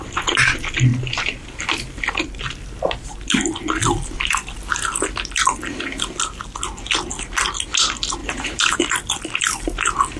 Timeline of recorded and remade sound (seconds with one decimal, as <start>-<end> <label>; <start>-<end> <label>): 0.0-8.2 recorded; 8.2-8.9 remade; 8.9-10.2 recorded